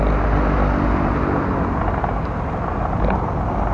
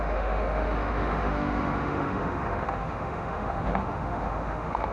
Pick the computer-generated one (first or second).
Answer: second